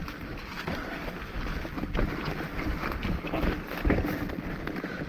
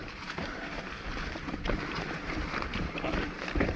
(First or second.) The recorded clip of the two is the first